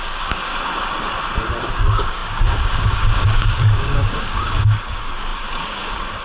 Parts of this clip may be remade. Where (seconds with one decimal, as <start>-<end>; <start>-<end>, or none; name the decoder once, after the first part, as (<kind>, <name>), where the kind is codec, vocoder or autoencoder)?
0.0-0.5 (codec, DAC); 1.7-6.2